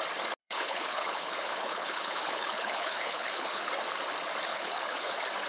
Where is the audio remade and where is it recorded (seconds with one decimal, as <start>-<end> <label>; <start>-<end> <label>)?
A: 0.0-0.4 recorded; 0.4-3.7 remade; 3.7-4.5 recorded; 4.5-5.1 remade; 5.1-5.5 recorded